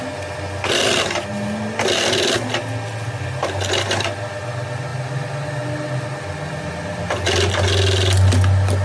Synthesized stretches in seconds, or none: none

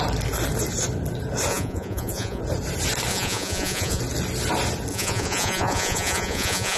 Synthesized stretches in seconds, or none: 1.5-2.4 (vocoder, Vocos); 3.1-4.0; 4.9-6.8

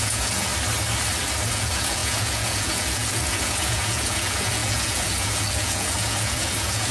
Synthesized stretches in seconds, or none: 0.0-0.5 (vocoder, Vocos); 1.5-6.9

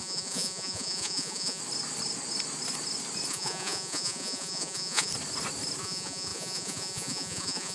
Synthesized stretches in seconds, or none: 0.0-1.6 (vocoder, Vocos); 3.3-5.1; 5.8-7.7

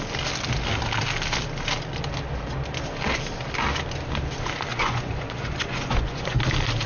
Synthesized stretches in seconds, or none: 4.7-6.4 (vocoder, Vocos)

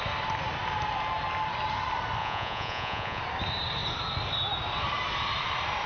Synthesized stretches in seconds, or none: 2.2-3.2 (vocoder, Vocos)

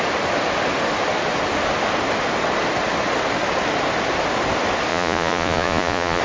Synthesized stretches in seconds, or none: 4.9-6.2 (vocoder, Vocos)

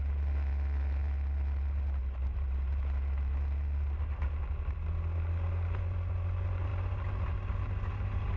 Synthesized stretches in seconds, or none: none